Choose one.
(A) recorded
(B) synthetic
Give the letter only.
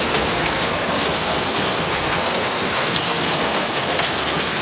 B